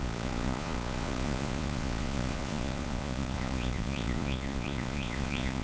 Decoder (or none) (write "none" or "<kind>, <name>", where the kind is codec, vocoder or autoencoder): vocoder, Vocos